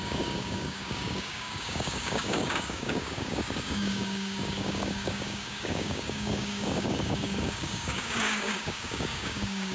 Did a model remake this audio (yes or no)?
yes